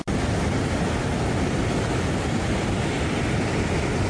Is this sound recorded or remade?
recorded